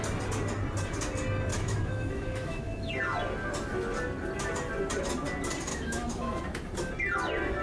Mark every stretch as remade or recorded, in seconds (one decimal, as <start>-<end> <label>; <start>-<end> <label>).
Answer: 0.0-1.5 recorded; 1.5-2.9 remade; 2.9-5.7 recorded; 5.7-6.4 remade; 6.4-7.6 recorded